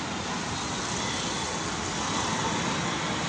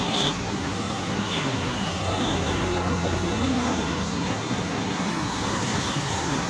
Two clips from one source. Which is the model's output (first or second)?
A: second